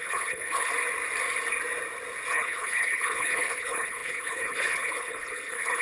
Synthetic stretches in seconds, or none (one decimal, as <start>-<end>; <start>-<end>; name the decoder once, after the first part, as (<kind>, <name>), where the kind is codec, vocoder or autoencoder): 0.0-0.7 (codec, HILCodec); 2.3-5.8